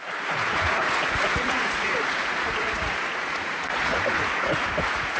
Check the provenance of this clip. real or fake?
fake